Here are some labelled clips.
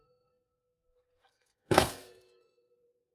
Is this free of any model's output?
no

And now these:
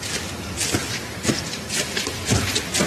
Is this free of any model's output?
yes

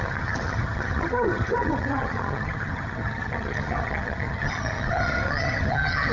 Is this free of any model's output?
no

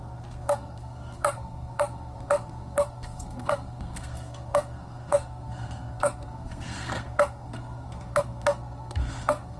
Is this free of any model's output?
no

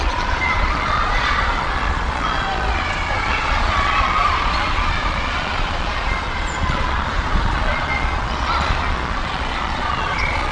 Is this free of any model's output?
no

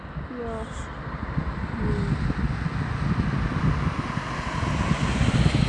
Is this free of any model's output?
yes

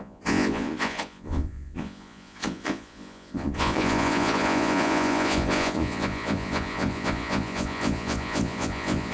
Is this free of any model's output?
no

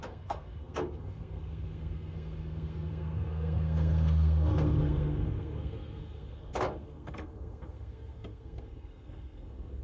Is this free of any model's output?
no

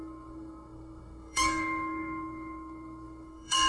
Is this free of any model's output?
no